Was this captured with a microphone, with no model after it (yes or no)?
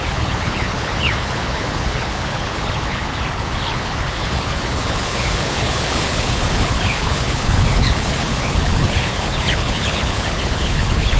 no